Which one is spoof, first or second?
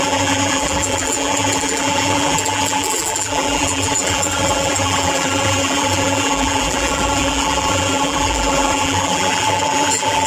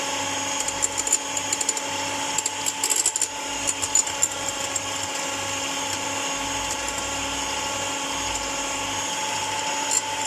first